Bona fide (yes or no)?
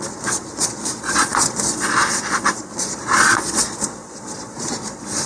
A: no